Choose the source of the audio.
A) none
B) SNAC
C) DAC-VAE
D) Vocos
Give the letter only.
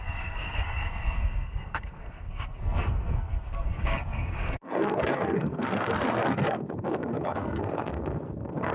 B